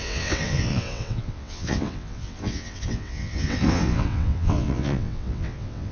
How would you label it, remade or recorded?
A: remade